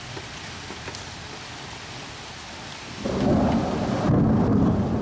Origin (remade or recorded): recorded